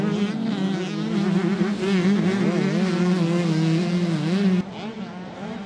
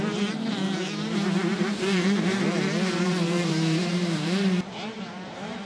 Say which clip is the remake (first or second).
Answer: second